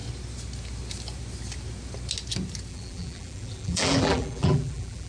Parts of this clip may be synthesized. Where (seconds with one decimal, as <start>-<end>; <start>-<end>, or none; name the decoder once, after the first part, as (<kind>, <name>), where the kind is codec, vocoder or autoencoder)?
2.7-5.1 (vocoder, BigVGAN v2)